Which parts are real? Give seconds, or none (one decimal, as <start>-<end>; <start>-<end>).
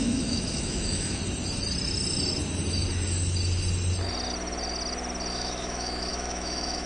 1.2-5.3